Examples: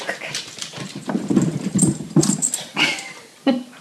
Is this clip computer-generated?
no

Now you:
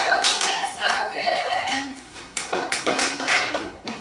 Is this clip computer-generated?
yes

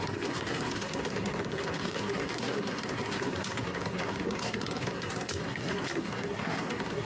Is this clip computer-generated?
yes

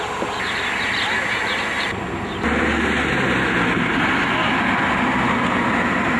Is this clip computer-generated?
no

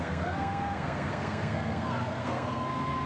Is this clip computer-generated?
yes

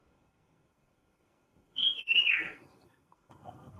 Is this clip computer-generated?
yes